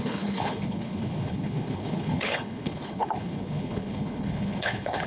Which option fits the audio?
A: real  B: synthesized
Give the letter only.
B